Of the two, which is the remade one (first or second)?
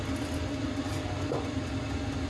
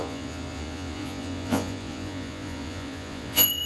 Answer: second